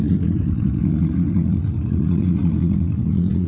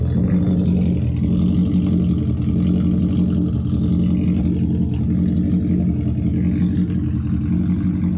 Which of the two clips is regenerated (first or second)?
first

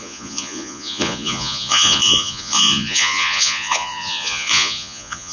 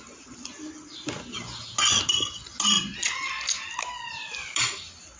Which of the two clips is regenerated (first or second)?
first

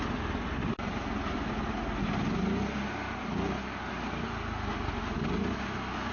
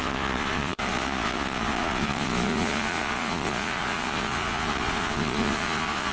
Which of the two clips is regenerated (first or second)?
second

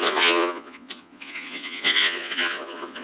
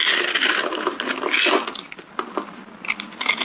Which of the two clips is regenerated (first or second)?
first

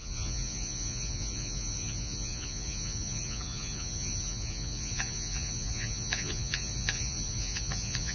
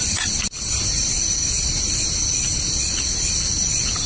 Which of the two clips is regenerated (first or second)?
first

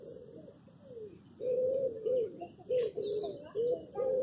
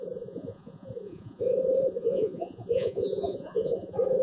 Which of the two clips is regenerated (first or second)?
second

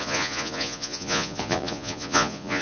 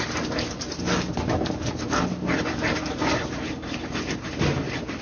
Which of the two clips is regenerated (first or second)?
first